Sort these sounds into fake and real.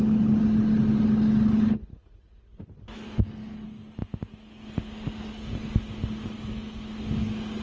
real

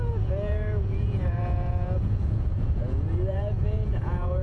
fake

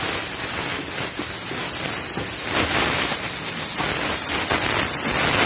real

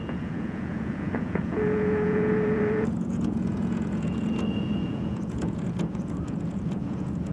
fake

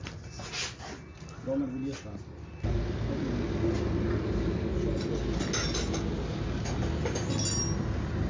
real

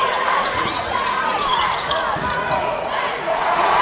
fake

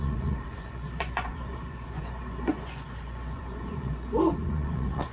fake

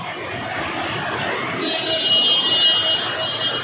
real